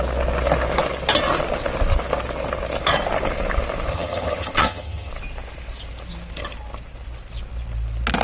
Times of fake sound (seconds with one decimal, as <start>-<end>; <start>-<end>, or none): 3.9-5.1